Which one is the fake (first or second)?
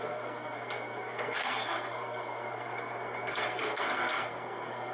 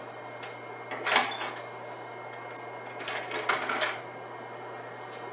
first